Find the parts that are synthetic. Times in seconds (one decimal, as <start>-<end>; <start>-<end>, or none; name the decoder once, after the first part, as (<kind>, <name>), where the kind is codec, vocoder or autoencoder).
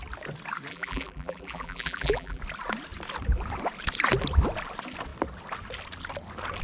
0.7-2.4 (vocoder, BigVGAN v2)